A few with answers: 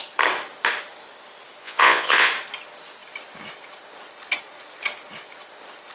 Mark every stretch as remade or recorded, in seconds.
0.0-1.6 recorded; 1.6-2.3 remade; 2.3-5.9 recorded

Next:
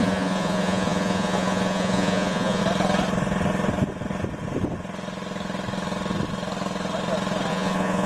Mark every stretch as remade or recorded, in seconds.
0.0-2.6 remade; 2.6-7.5 recorded; 7.5-8.1 remade